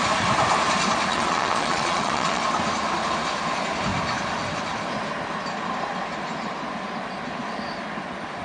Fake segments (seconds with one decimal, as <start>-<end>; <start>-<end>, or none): 1.1-2.4